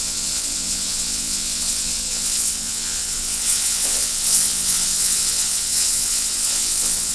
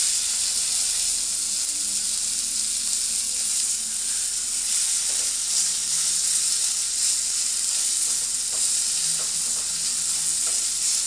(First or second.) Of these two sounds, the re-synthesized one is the first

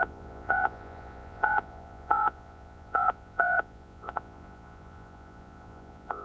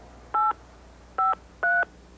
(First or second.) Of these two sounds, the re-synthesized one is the first